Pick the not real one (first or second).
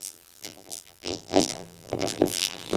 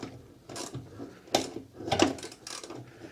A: first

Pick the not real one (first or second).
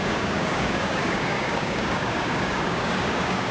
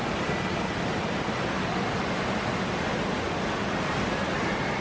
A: first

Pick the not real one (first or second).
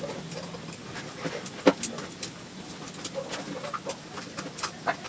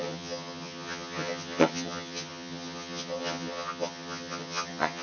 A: second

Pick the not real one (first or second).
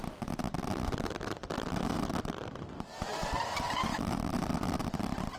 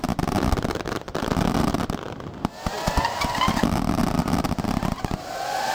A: first